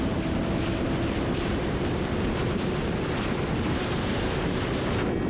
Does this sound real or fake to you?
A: fake